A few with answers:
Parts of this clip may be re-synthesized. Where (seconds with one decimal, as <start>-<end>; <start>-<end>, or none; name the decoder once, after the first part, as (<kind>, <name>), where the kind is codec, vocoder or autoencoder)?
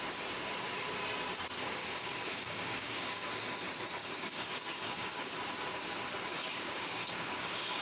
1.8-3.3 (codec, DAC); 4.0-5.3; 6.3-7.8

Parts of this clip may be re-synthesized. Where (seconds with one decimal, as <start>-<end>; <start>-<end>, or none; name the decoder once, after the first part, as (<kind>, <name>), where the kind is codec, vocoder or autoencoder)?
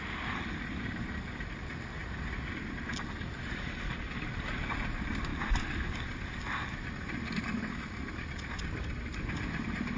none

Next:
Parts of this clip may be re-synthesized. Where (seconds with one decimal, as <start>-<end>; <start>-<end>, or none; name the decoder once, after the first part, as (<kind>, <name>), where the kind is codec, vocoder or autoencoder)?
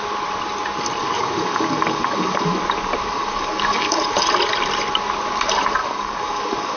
1.0-2.6 (codec, DAC); 3.0-4.2; 5.8-6.8